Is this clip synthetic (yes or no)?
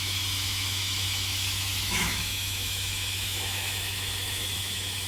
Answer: yes